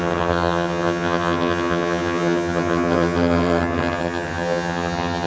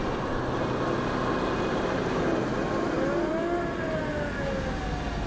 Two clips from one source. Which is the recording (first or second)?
second